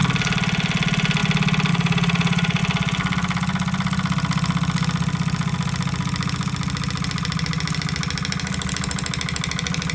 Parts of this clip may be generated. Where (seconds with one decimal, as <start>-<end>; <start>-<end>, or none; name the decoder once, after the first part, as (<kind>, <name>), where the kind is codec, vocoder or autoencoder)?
1.7-2.6 (vocoder, Vocos)